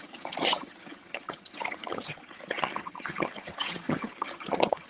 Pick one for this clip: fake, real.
fake